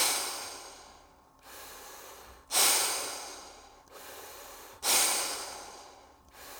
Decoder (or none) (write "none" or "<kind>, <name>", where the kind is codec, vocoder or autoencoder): vocoder, BigVGAN v2